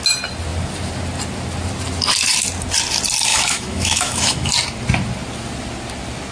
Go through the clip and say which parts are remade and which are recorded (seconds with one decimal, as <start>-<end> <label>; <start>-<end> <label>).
0.0-3.3 recorded; 3.3-4.5 remade; 4.5-6.3 recorded